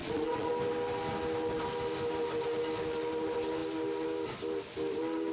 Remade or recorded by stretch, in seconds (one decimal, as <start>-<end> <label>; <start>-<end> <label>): 0.0-0.5 remade; 0.5-5.3 recorded